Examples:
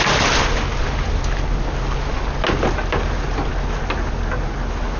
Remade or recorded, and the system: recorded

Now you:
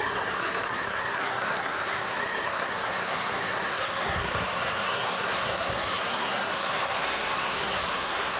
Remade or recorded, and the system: remade, codec, SNAC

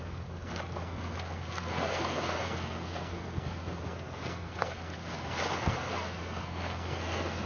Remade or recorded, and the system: remade, codec, SNAC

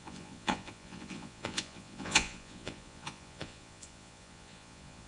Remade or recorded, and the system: remade, vocoder, Vocos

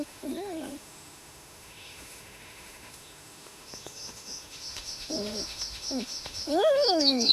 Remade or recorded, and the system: remade, autoencoder, DAC-VAE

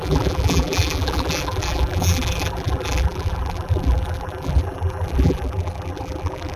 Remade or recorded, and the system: remade, vocoder, BigVGAN v2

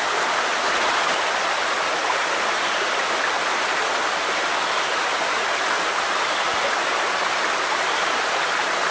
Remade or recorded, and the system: recorded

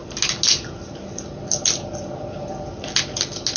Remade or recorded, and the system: recorded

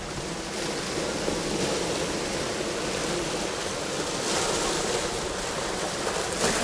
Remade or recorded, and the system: recorded